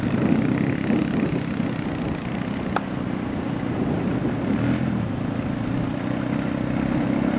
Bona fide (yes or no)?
yes